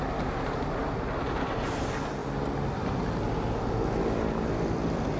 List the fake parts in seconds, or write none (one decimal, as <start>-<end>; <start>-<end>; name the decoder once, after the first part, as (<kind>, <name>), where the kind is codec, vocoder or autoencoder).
none